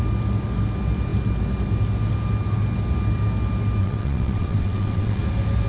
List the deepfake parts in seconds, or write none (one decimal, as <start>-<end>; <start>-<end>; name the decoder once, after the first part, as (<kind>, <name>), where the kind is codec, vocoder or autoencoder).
3.8-5.2 (vocoder, WaveNeXt)